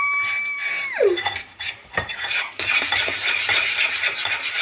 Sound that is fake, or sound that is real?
fake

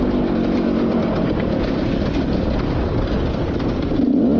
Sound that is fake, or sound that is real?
real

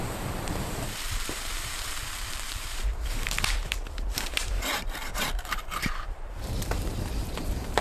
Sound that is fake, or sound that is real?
fake